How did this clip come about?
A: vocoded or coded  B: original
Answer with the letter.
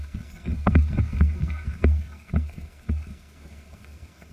A